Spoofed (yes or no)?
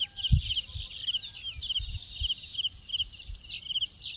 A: no